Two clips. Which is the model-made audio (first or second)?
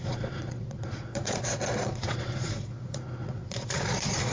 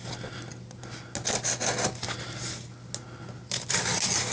first